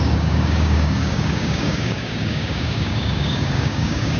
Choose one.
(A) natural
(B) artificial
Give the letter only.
B